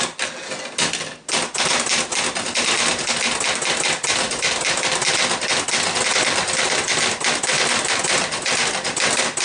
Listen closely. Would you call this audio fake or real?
real